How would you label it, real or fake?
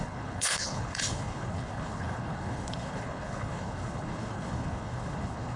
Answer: fake